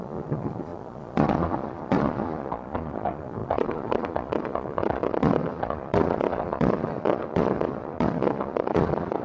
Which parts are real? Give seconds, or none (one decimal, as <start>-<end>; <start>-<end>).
none